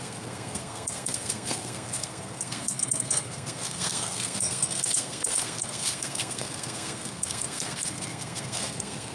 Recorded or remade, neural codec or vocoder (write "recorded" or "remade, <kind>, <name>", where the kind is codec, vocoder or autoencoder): remade, codec, SNAC